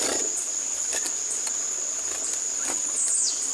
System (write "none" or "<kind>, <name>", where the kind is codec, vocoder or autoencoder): none